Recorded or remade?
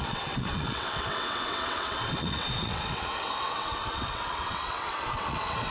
remade